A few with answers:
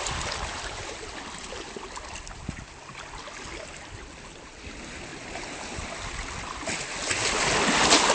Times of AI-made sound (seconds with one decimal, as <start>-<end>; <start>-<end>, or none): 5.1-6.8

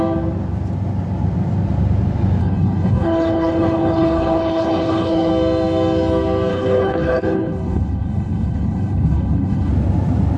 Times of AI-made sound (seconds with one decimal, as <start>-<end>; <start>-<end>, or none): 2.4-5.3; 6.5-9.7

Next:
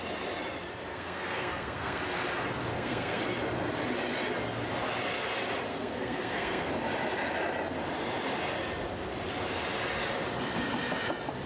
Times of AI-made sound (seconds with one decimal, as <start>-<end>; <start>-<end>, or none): 0.9-2.0; 2.7-3.2; 5.7-6.7

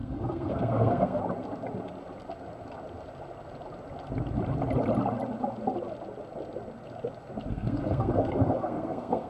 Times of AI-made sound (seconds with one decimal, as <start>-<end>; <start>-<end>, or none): 0.0-1.2; 7.5-9.3